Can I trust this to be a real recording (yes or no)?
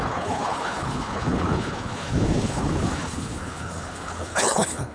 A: no